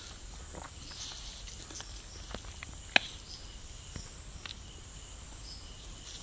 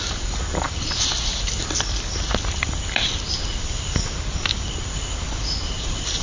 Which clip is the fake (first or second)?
second